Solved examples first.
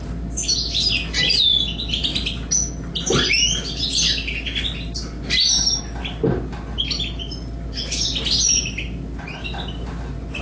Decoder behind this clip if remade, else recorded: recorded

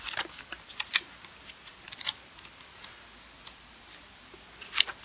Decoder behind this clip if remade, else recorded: recorded